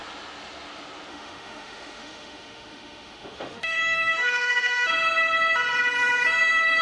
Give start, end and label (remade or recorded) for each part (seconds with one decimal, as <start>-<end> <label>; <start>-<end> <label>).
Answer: 0.0-1.1 recorded; 1.1-4.9 remade; 4.9-6.8 recorded